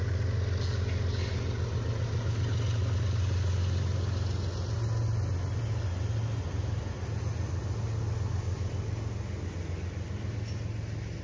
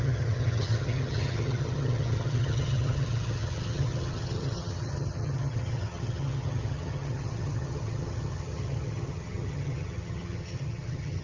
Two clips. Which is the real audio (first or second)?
first